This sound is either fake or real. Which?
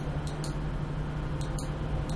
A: real